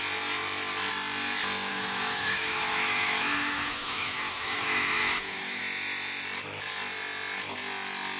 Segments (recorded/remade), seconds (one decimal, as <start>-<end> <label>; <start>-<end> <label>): 0.0-1.7 recorded; 1.7-5.6 remade; 5.6-8.2 recorded